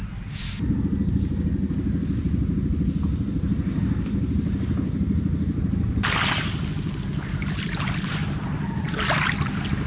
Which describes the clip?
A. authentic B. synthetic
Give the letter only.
A